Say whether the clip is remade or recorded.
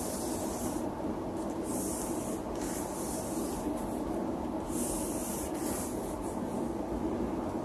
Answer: recorded